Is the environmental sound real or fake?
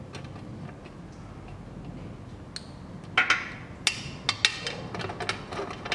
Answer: real